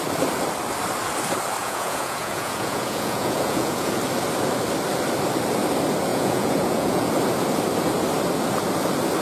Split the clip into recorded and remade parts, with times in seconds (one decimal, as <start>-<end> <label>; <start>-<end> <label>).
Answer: 0.0-1.6 recorded; 1.6-4.0 remade; 4.0-6.1 recorded; 6.1-7.1 remade; 7.1-9.2 recorded